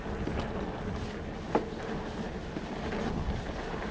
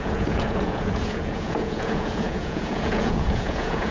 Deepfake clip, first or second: second